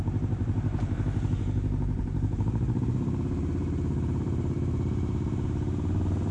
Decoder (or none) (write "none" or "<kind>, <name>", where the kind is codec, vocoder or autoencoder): vocoder, BigVGAN v2